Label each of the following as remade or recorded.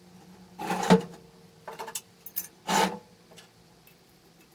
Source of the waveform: recorded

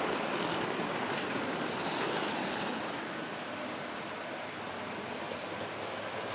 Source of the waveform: remade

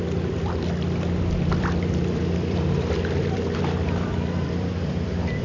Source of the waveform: remade